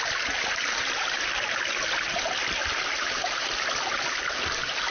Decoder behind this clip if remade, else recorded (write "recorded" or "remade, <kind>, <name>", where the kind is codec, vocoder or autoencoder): recorded